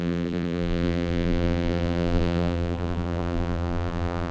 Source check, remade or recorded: remade